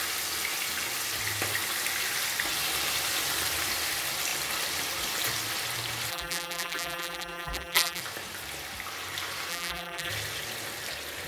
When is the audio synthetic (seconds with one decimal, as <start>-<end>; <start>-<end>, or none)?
6.1-8.0; 9.5-10.1